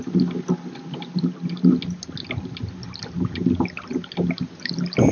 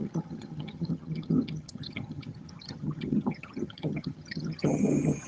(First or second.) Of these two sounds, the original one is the first